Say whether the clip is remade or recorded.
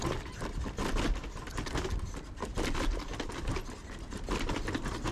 recorded